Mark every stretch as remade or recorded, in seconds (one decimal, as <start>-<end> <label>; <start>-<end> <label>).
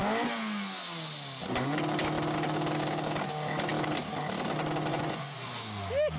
0.0-4.9 recorded; 4.9-5.5 remade; 5.5-6.2 recorded